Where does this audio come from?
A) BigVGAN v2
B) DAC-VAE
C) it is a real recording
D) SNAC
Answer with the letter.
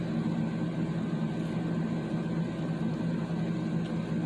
C